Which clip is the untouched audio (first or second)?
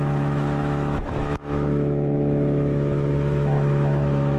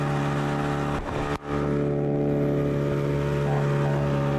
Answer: second